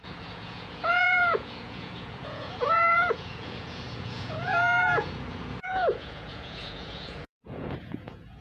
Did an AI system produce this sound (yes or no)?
yes